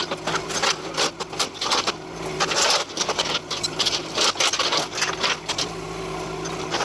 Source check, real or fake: real